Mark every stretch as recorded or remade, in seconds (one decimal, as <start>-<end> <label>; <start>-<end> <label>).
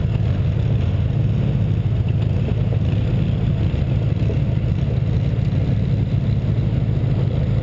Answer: 0.0-7.6 recorded